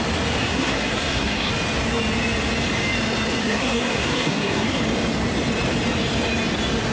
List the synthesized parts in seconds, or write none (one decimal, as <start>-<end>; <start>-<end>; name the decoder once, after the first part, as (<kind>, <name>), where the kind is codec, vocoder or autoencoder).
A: 0.4-1.5 (codec, SNAC); 3.4-4.8